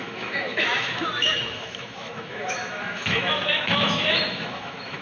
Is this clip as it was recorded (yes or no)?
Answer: no